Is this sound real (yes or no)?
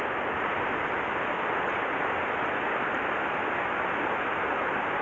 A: yes